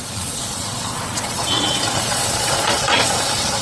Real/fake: fake